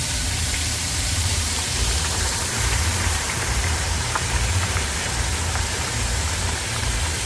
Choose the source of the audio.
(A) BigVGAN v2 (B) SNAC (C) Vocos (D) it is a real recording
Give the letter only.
A